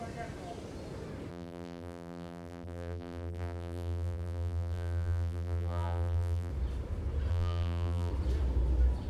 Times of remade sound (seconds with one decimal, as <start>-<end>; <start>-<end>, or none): 1.3-6.5; 7.3-8.1